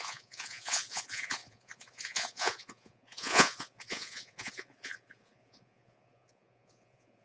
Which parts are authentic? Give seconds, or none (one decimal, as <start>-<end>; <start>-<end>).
none